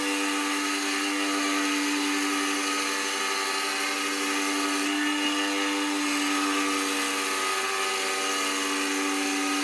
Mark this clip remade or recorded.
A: recorded